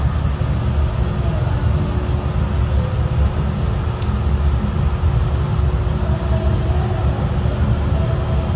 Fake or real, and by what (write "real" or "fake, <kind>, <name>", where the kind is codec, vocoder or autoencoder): real